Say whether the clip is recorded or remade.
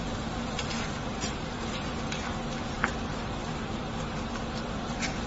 remade